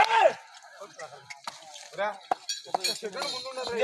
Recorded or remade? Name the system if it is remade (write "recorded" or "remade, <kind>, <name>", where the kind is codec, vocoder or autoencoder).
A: recorded